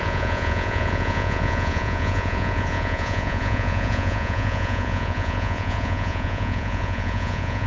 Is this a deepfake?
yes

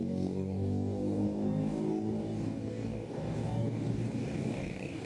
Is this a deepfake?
yes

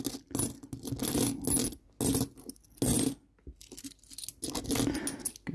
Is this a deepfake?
no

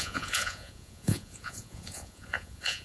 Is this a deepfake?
yes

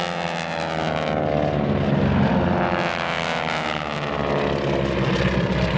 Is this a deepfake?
no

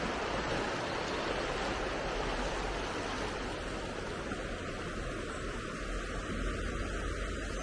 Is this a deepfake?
no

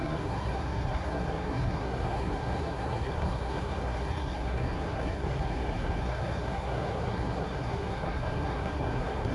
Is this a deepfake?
yes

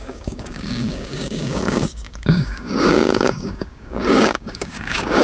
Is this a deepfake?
yes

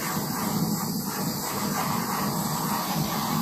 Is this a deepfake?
no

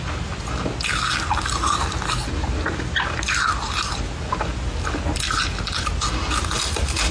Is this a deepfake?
no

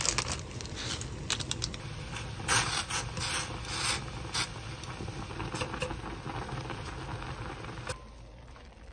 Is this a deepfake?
no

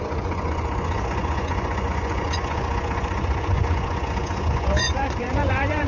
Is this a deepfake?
yes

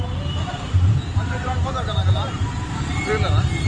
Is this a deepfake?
no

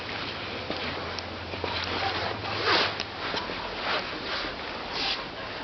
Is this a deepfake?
no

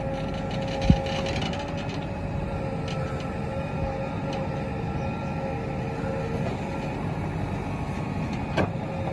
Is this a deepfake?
no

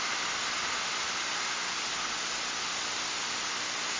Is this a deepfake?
no